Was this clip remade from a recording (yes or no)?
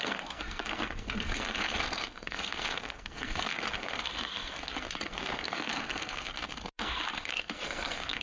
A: yes